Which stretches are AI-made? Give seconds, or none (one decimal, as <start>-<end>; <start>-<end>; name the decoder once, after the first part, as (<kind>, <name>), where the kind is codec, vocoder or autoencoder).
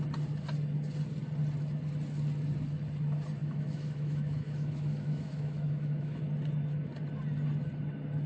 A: 3.4-6.2 (autoencoder, DAC-VAE)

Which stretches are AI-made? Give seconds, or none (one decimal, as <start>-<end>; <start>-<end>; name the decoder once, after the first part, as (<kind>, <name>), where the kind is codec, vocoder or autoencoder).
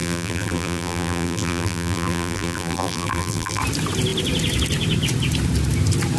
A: 0.0-3.6 (vocoder, BigVGAN v2)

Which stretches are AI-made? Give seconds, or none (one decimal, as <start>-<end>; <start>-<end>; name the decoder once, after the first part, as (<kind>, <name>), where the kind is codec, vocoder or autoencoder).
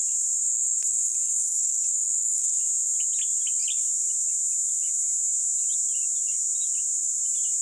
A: 0.4-2.6 (codec, SNAC)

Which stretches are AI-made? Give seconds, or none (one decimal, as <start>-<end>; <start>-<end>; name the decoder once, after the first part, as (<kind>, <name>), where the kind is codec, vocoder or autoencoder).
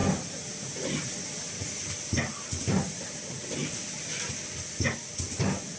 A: none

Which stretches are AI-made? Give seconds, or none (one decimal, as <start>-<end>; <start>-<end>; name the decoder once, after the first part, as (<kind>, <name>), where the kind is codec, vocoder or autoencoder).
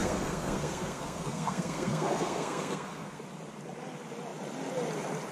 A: 0.0-3.2 (codec, SNAC)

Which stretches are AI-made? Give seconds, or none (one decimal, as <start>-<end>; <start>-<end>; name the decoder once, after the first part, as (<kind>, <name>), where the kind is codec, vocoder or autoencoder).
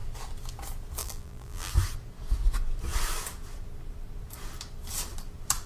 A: 1.0-1.7 (vocoder, BigVGAN v2)